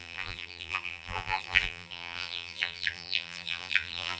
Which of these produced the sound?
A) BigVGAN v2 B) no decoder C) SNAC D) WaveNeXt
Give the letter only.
A